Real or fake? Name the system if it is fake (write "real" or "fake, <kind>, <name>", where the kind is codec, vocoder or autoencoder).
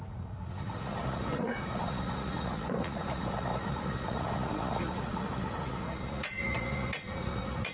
fake, vocoder, Vocos